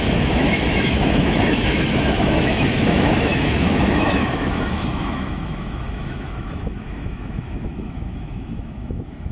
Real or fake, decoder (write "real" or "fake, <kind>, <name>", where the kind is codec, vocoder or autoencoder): fake, autoencoder, DAC-VAE